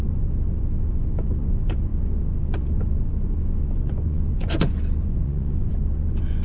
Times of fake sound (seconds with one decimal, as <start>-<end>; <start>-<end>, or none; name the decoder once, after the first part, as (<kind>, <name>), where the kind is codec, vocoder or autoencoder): 0.0-6.4 (vocoder, Vocos)